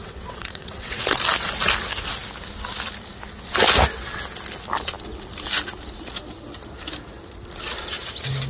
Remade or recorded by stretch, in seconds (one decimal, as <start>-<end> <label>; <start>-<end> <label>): 0.0-1.2 remade; 1.2-8.5 recorded